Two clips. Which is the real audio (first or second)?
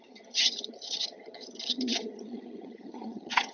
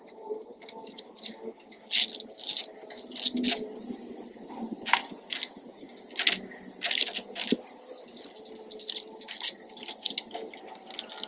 second